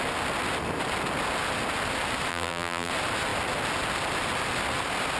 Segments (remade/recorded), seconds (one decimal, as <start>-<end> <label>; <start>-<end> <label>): 0.0-2.3 recorded; 2.3-2.9 remade; 2.9-5.2 recorded

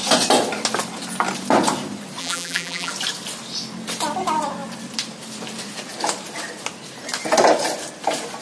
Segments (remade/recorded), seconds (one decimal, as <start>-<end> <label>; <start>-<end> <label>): 0.0-2.2 recorded; 2.2-2.9 remade; 2.9-8.4 recorded

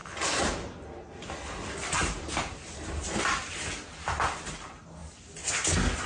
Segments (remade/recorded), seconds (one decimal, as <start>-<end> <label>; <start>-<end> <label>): 0.0-2.0 recorded; 2.0-3.4 remade; 3.4-6.1 recorded

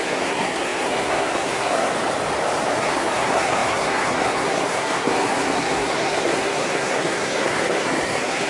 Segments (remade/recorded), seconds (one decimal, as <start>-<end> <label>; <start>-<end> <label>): 0.0-1.9 remade; 1.9-2.7 recorded; 2.7-8.5 remade